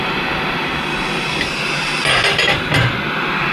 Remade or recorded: recorded